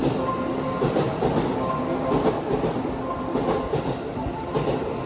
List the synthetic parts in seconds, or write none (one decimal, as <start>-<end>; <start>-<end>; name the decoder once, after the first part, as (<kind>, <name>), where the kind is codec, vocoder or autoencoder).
none